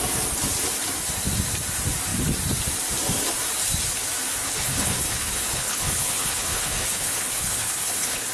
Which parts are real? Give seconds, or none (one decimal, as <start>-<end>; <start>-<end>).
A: 0.0-4.4